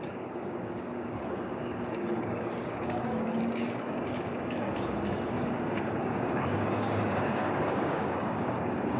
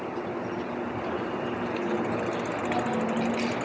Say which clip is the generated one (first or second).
first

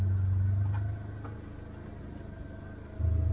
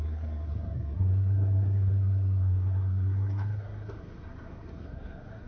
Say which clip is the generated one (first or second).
second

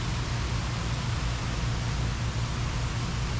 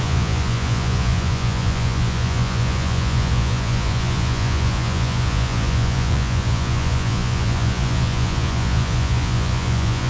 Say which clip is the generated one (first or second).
second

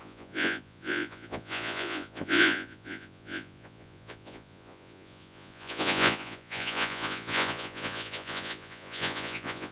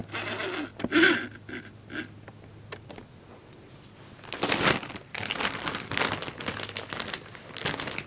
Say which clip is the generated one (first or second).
first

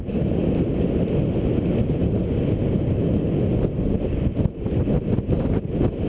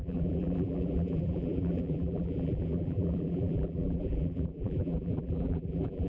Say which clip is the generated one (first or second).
second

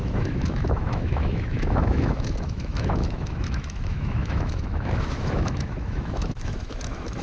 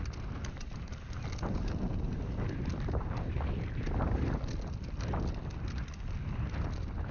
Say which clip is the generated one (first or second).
first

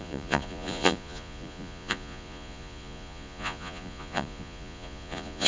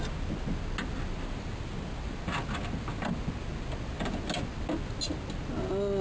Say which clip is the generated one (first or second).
first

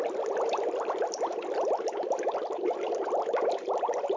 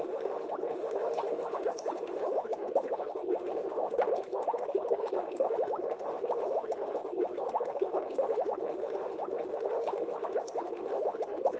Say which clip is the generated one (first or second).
second